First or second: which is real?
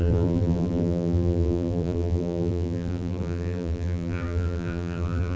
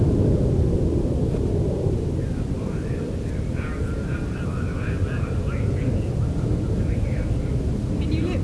second